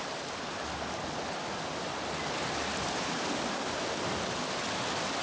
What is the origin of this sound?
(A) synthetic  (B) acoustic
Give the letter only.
B